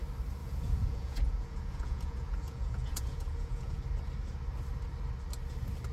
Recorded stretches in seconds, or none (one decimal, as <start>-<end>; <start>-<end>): 0.0-0.4; 3.8-5.9

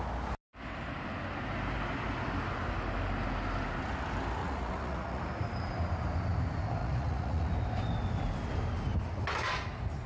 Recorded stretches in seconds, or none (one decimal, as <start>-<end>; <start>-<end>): 0.0-4.4; 5.2-6.8; 7.5-10.1

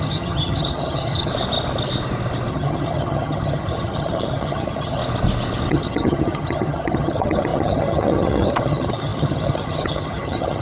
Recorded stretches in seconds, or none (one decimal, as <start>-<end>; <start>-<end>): 1.3-2.5; 5.0-5.7

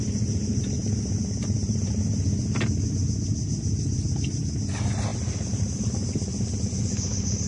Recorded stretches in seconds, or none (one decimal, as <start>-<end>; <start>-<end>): 0.0-7.5

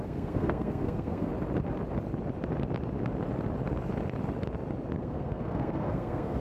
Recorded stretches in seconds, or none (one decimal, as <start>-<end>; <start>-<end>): 1.3-5.0

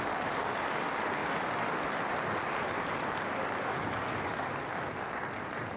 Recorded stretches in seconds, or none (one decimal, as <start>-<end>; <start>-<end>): 0.0-5.8

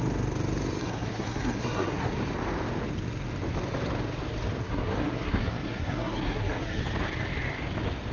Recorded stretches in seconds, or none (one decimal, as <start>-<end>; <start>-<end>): 0.0-0.8; 2.1-4.6; 6.8-8.1

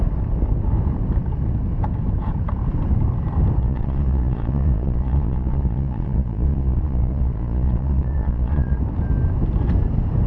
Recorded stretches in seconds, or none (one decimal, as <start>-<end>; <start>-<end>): 0.0-3.6; 8.8-10.3